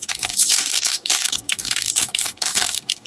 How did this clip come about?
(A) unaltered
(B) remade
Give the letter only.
B